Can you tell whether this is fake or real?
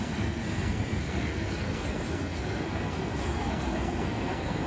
fake